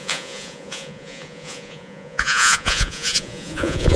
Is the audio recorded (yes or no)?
no